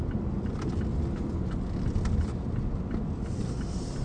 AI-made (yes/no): no